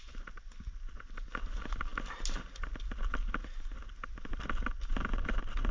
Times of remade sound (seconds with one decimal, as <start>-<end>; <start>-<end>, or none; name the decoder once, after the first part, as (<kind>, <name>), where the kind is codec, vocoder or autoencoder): none